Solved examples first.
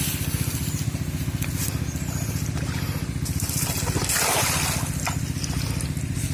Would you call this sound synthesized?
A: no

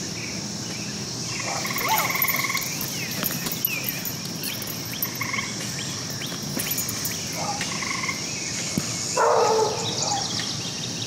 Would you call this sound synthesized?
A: no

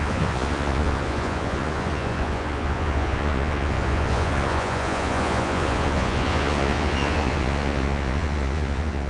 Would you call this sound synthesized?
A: yes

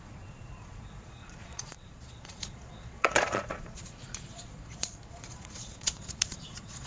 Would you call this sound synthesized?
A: yes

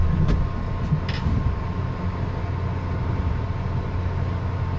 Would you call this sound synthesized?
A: no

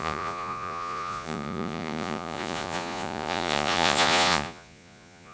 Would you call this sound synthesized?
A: yes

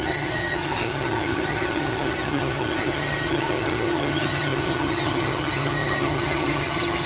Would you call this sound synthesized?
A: yes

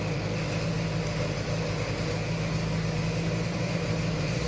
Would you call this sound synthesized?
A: no